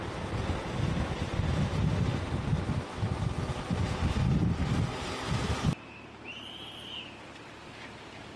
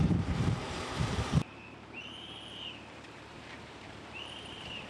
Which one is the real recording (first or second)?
first